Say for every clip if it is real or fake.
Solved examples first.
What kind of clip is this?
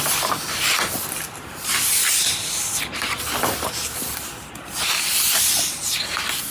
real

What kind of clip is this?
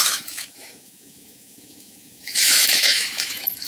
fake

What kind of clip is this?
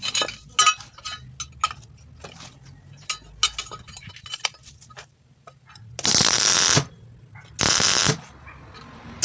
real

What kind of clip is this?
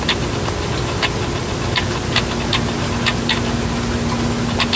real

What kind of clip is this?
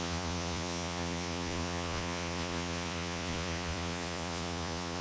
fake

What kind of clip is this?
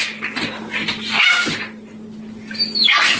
real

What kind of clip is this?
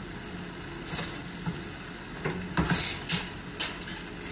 real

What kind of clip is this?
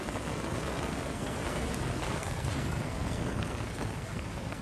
fake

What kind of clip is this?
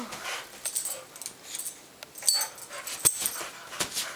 real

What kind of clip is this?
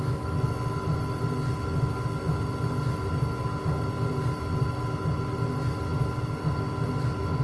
real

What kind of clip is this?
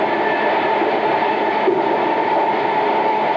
real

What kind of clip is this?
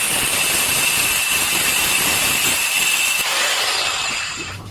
fake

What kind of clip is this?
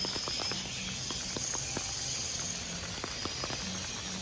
real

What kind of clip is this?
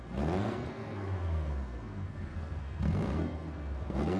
fake